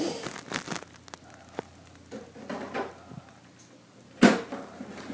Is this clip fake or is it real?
real